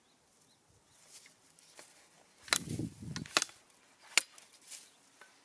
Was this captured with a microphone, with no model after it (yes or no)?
yes